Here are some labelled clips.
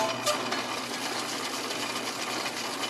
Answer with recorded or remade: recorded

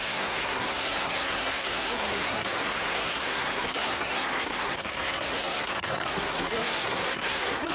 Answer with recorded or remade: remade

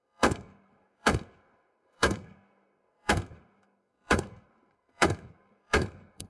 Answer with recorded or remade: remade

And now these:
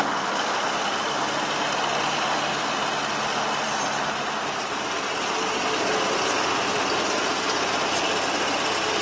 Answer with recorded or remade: recorded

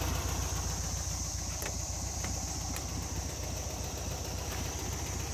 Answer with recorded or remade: recorded